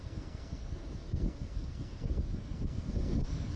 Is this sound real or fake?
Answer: fake